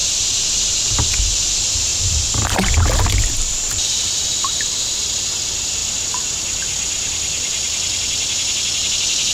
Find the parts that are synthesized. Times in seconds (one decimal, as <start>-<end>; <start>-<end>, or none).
1.9-5.0